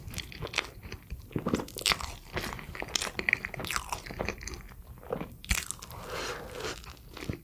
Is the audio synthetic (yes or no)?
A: no